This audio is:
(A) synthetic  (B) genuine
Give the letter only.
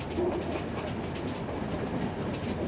B